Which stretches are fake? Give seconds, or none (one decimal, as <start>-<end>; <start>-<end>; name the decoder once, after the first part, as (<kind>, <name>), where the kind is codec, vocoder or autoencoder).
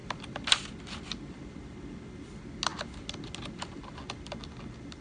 none